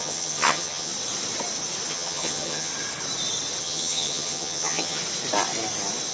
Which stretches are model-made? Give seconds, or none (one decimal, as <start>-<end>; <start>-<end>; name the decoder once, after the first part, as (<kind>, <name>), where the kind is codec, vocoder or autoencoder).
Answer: 0.0-0.9 (vocoder, HiFi-GAN); 1.9-2.7; 3.6-5.0